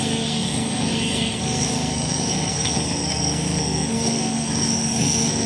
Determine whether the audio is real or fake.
fake